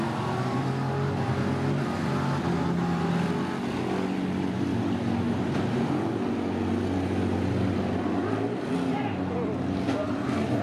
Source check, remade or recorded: recorded